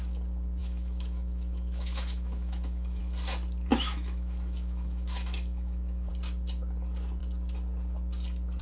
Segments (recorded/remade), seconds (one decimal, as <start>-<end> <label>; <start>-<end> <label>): 0.0-0.6 recorded; 0.6-3.0 remade; 3.0-3.7 recorded; 3.7-6.1 remade; 6.1-8.6 recorded